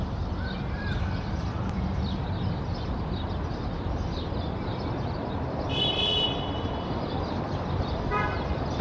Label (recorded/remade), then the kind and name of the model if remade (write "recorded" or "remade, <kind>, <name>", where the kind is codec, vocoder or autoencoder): remade, vocoder, BigVGAN v2